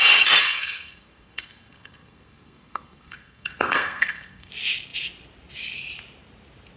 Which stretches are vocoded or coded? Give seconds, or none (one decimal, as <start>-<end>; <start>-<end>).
0.4-4.5